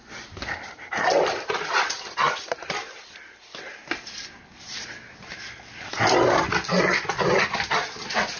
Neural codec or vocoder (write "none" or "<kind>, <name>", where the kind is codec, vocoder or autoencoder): none